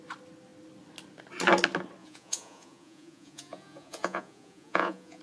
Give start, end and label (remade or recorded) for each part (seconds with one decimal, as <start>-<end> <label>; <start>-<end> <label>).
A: 0.0-2.0 recorded; 2.0-5.2 remade